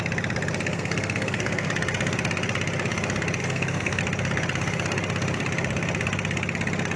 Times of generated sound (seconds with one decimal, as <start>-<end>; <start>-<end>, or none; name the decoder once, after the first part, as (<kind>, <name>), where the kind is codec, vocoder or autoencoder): 0.7-1.7 (codec, SNAC); 3.4-4.0